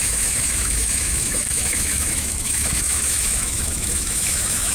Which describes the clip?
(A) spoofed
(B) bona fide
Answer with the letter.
A